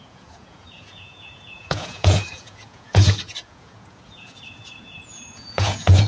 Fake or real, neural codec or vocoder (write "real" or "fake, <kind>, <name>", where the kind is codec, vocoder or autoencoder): fake, vocoder, Vocos